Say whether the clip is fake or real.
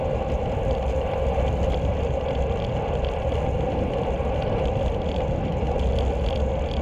real